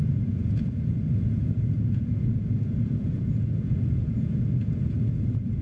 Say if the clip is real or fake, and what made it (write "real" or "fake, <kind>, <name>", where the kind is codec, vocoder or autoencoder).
fake, vocoder, Vocos